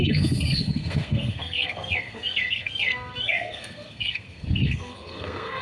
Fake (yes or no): yes